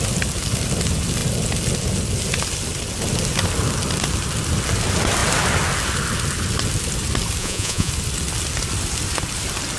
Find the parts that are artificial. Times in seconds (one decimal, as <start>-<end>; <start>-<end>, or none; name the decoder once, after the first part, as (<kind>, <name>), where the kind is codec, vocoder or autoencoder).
7.4-7.9 (vocoder, Vocos)